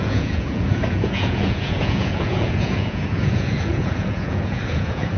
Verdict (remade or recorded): remade